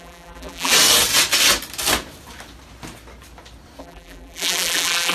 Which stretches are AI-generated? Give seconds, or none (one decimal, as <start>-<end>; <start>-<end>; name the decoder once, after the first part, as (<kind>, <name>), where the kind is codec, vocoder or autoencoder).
0.0-0.7 (vocoder, BigVGAN v2); 3.8-5.1